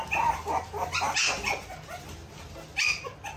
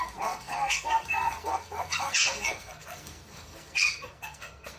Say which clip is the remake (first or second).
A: second